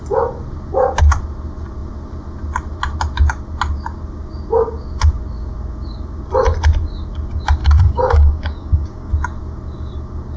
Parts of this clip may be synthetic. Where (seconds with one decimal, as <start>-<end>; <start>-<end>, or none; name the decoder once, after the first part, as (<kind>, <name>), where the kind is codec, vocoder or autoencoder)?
7.6-9.1 (codec, DAC)